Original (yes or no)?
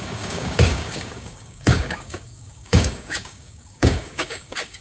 no